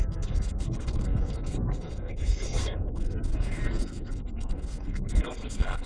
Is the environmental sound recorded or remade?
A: remade